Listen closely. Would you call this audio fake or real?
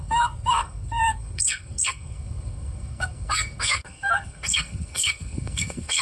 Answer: fake